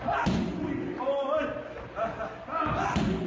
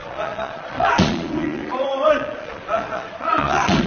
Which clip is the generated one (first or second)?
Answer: second